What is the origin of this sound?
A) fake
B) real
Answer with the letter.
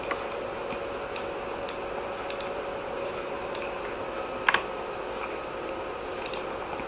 B